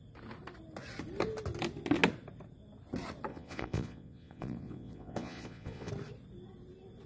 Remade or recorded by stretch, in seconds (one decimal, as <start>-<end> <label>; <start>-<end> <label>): 0.0-3.3 recorded; 3.3-5.9 remade; 5.9-7.1 recorded